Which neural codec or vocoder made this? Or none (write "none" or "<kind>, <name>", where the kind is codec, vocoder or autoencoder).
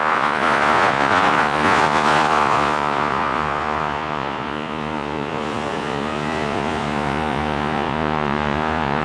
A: vocoder, Vocos